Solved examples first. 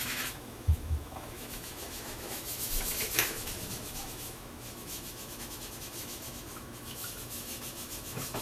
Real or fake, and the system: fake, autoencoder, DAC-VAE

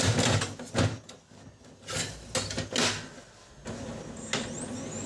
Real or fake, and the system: real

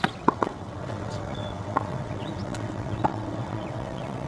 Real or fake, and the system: fake, vocoder, WaveNeXt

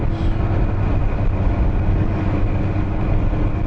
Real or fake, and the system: real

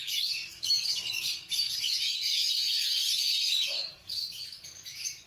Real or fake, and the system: fake, codec, DAC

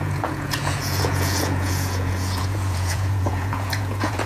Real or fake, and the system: fake, vocoder, Vocos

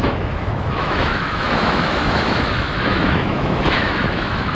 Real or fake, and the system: fake, autoencoder, DAC-VAE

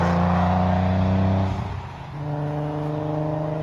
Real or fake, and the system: real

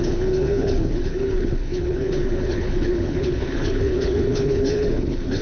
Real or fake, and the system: fake, codec, HILCodec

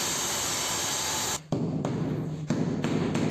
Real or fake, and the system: real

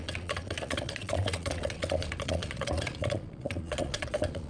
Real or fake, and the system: fake, vocoder, Vocos